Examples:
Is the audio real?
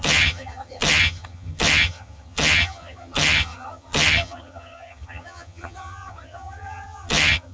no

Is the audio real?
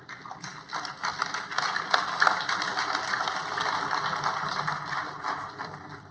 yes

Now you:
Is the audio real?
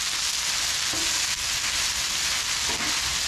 yes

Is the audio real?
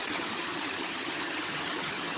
no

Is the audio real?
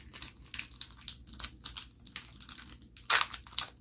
yes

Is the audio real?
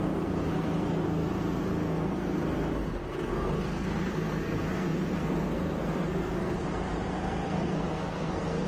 no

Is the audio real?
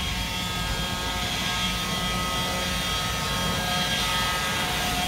yes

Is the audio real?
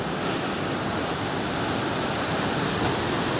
yes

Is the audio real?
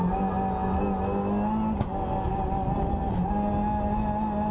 yes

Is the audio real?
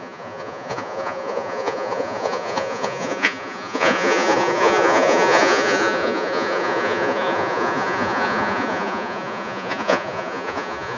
no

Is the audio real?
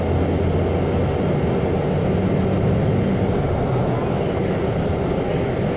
yes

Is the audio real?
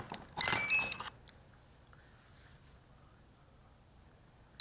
yes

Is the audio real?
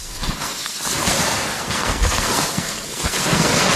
no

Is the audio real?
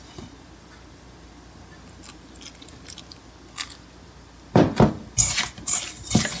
yes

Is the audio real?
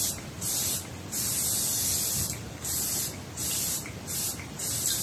yes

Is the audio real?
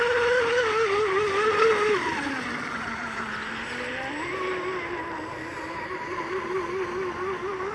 yes